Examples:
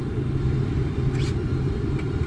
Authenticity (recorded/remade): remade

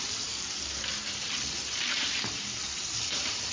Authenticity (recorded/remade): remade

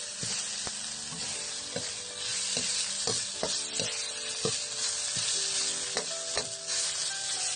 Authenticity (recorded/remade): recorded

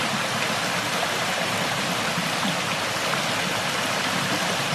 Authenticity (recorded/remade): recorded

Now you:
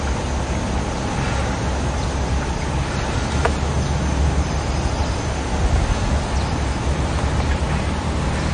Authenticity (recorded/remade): recorded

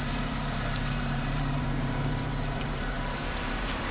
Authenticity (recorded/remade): remade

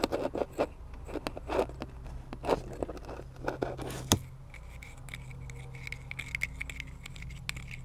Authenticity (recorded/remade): recorded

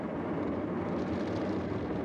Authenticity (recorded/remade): remade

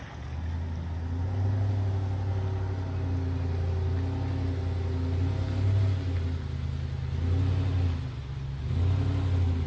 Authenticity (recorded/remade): recorded